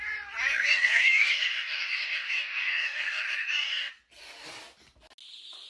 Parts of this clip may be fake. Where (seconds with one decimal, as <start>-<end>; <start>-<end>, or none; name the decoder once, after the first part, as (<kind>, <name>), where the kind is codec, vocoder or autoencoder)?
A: 0.5-3.9 (codec, DAC)

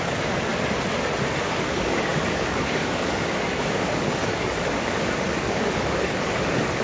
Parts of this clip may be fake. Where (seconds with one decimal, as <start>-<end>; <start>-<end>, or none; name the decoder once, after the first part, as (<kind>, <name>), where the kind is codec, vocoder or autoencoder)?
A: 0.0-0.5 (codec, DAC); 1.4-6.8

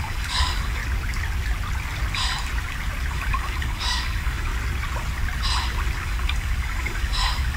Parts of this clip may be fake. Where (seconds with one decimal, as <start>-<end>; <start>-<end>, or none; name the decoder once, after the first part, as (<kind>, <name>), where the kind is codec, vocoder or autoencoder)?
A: 0.0-0.8 (codec, DAC); 3.1-4.5; 6.0-7.6

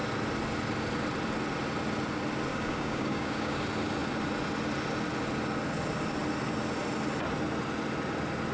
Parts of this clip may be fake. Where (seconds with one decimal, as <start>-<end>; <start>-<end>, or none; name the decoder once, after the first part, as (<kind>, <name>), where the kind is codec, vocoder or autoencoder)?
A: 2.5-3.6 (codec, DAC)

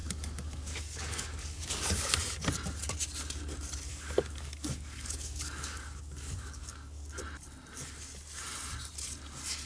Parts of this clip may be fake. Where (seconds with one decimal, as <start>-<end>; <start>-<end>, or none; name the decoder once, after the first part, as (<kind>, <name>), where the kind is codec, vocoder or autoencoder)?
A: 0.0-2.2 (codec, DAC); 3.9-7.2

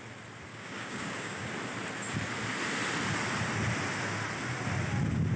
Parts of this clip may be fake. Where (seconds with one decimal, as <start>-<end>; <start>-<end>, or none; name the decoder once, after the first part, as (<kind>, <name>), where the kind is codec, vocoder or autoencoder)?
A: 0.5-1.5 (codec, DAC)

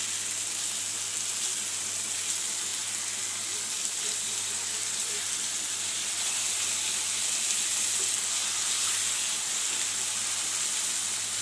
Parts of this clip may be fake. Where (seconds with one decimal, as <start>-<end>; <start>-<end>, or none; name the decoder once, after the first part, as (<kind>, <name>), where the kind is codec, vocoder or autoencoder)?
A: none